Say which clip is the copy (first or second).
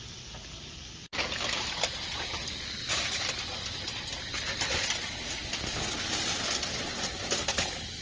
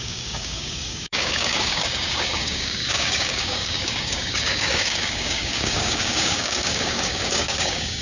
second